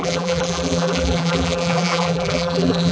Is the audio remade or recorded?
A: remade